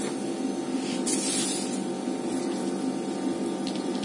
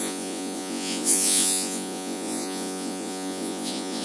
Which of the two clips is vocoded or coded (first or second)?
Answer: second